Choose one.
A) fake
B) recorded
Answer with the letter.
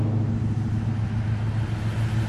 B